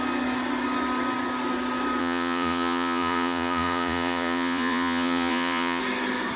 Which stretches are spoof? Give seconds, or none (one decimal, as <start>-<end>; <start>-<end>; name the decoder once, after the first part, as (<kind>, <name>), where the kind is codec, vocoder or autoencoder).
2.0-5.8 (vocoder, Vocos)